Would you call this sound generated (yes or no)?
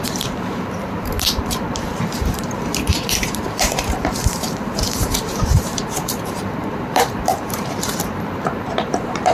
yes